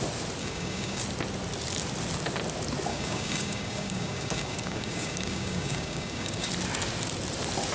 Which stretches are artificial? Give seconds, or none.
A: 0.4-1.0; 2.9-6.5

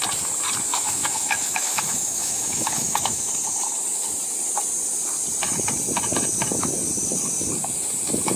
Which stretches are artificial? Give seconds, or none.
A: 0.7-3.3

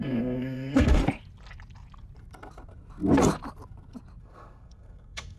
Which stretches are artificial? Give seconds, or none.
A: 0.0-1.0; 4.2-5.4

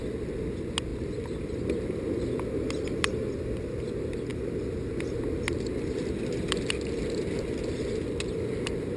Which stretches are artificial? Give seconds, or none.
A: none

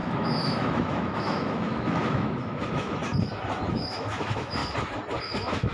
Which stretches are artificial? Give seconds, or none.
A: 0.0-3.0; 3.7-4.6; 5.2-5.7